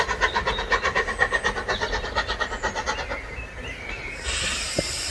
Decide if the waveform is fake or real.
real